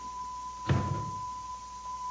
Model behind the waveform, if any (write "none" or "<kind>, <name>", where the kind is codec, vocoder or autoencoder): none